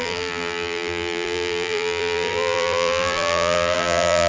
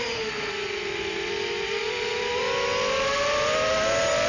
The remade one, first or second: first